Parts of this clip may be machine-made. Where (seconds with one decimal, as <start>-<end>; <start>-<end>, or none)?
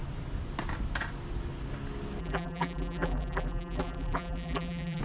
2.2-5.0